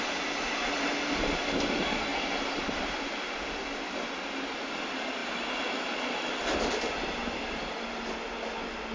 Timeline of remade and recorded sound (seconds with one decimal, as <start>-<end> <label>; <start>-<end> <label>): 0.0-8.9 recorded

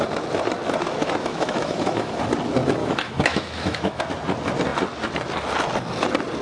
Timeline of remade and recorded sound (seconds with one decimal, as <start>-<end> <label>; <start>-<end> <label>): 0.0-1.2 recorded; 1.2-2.2 remade; 2.2-2.8 recorded; 2.8-4.0 remade; 4.0-6.4 recorded

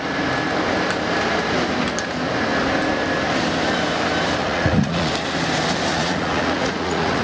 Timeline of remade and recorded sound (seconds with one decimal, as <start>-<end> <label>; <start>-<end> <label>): 0.0-4.4 recorded; 4.4-5.1 remade; 5.1-5.9 recorded; 5.9-7.2 remade